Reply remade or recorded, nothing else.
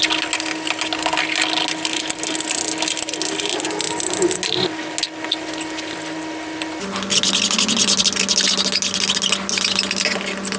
recorded